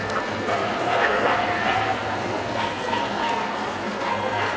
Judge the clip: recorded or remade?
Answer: remade